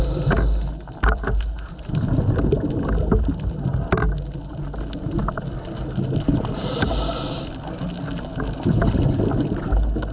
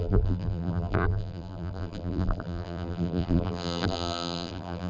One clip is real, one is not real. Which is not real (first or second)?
second